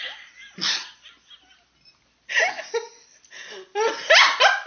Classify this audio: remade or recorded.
recorded